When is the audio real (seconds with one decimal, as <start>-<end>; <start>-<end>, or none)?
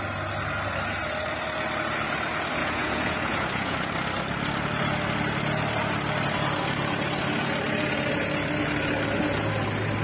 0.0-2.6; 3.9-10.0